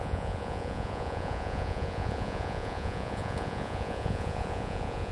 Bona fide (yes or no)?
no